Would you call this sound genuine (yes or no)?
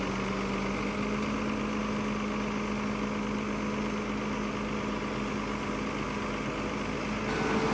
yes